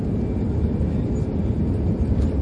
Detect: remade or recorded recorded